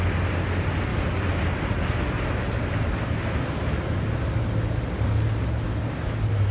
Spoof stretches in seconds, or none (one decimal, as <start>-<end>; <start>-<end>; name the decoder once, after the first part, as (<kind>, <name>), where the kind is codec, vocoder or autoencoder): none